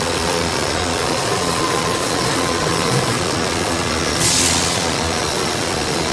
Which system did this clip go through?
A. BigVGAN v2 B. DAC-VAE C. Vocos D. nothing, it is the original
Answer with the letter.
C